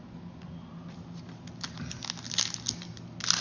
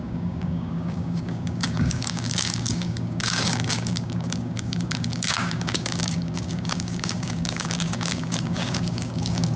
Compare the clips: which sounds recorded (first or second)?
first